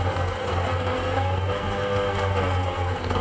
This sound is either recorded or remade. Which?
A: remade